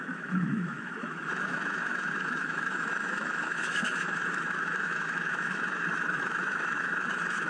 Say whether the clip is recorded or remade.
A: remade